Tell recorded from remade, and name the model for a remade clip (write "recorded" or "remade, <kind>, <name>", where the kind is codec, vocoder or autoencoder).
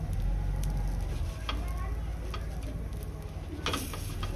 recorded